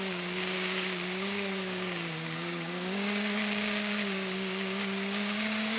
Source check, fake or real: fake